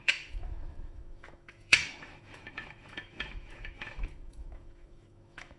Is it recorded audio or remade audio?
remade